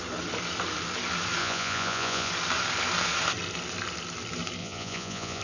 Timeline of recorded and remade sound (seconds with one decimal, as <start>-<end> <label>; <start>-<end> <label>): 0.0-1.4 recorded; 1.4-2.3 remade; 2.3-4.6 recorded; 4.6-5.4 remade